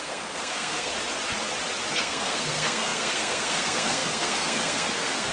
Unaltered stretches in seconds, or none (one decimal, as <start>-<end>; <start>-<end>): 0.9-1.9